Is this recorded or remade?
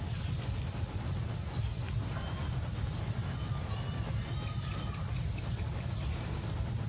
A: recorded